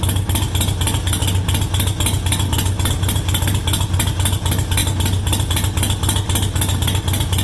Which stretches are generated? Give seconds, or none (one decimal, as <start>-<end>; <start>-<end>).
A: none